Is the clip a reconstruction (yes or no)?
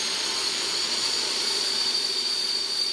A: yes